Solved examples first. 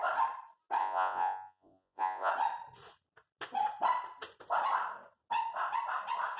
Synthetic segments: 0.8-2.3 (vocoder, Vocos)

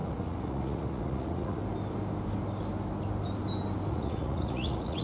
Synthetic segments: 0.0-1.6 (vocoder, Vocos); 3.9-5.0